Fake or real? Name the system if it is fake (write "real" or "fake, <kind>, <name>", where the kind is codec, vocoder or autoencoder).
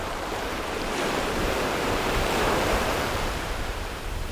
fake, vocoder, BigVGAN v2